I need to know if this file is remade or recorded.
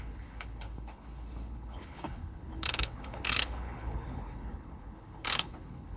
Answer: remade